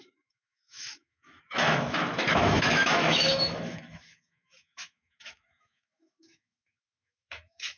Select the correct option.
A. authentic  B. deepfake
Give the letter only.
B